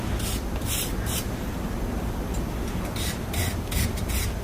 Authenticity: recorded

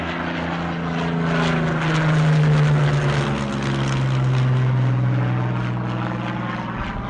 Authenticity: recorded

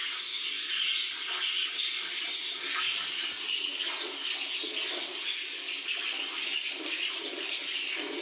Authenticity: recorded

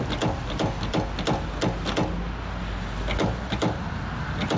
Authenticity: recorded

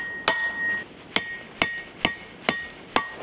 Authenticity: recorded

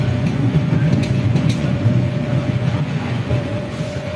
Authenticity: remade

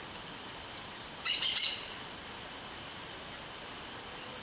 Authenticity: recorded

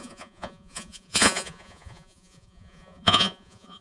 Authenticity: remade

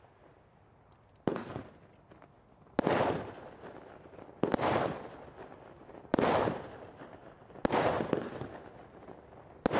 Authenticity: recorded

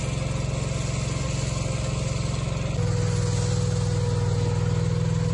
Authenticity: recorded